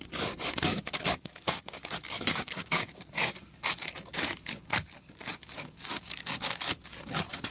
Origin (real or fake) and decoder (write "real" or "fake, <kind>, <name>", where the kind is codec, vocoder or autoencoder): fake, codec, DAC